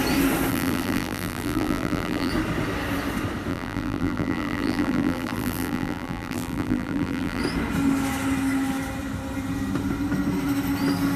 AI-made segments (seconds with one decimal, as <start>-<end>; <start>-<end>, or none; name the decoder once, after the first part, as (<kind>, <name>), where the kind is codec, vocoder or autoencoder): 0.5-2.3 (vocoder, BigVGAN v2); 3.5-7.4